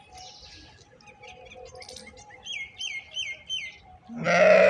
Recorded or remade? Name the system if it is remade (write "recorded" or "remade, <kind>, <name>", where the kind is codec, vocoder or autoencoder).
recorded